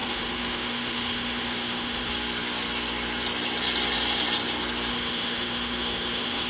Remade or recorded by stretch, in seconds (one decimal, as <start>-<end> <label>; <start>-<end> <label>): 0.0-2.1 remade; 2.1-4.9 recorded; 4.9-6.5 remade